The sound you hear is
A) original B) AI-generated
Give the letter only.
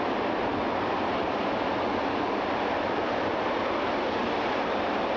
A